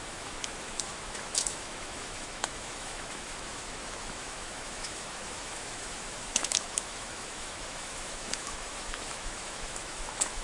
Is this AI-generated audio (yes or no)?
yes